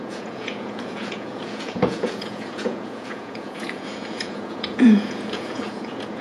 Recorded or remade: remade